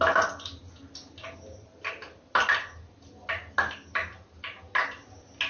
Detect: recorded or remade recorded